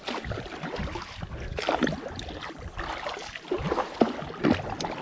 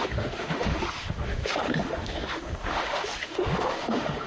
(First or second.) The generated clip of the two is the second